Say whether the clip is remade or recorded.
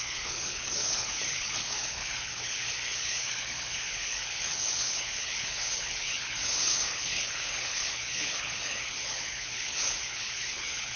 remade